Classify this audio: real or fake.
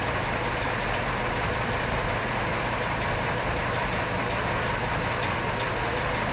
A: real